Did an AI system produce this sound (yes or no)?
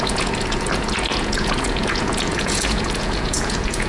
yes